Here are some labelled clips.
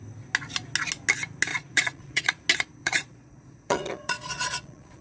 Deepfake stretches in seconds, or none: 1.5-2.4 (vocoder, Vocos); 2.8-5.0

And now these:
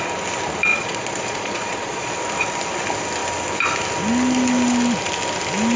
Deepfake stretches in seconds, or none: 0.7-2.1 (vocoder, Vocos)